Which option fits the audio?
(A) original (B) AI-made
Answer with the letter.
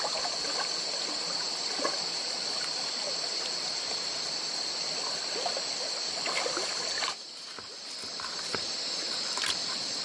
A